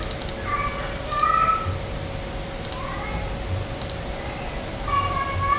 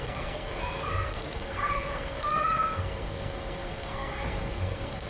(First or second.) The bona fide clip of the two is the first